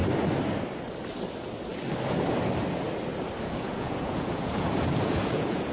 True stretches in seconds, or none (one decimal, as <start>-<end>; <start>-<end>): 0.0-3.4